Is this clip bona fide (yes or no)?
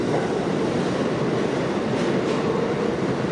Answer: no